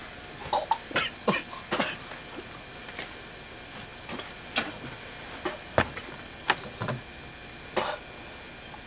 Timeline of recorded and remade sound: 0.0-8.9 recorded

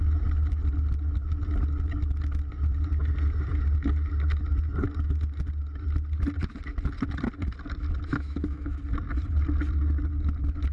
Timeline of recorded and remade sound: 0.0-8.1 recorded; 8.1-8.8 remade; 8.8-10.7 recorded

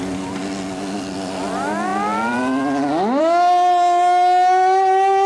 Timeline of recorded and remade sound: 0.0-5.3 recorded